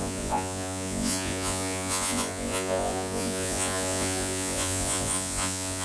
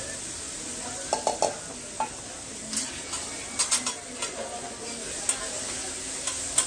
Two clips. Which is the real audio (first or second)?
second